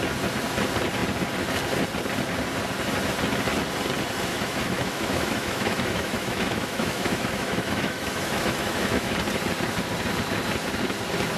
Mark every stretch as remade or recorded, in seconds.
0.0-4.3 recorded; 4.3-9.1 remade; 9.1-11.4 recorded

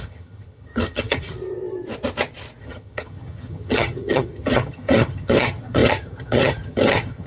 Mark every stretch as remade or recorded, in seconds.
0.0-1.4 remade; 1.4-2.6 recorded; 2.6-7.3 remade

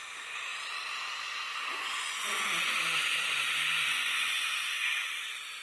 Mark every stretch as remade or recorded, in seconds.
0.0-1.7 recorded; 1.7-5.1 remade; 5.1-5.6 recorded

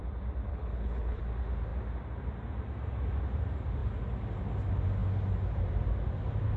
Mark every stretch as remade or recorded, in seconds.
0.0-0.5 recorded; 0.5-1.2 remade; 1.2-6.6 recorded